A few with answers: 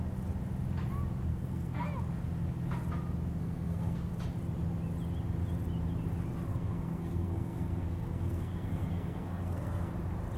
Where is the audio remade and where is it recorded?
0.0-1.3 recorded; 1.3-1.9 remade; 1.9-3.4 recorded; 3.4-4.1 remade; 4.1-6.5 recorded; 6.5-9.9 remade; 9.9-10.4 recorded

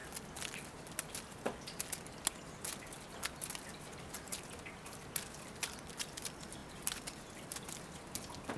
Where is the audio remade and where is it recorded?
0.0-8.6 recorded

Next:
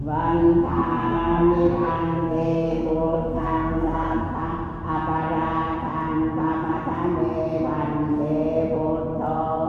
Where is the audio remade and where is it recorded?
0.0-0.7 recorded; 0.7-4.3 remade; 4.3-9.7 recorded